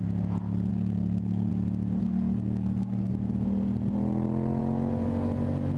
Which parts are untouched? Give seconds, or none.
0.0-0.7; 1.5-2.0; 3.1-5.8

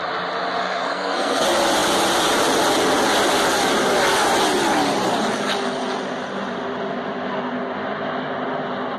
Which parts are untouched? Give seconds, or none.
0.0-0.6; 1.4-9.0